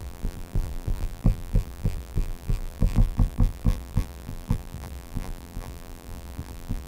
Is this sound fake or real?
fake